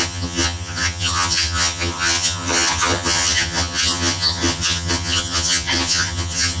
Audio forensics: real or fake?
fake